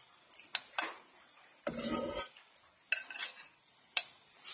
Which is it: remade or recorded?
recorded